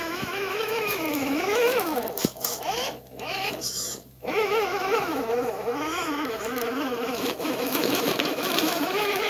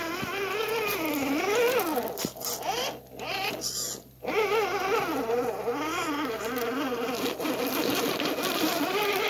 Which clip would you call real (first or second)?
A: second